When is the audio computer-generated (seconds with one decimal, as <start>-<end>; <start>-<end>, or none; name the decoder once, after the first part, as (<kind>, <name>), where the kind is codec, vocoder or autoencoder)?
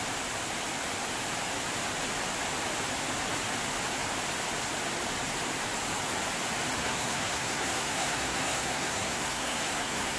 6.8-10.2 (codec, SNAC)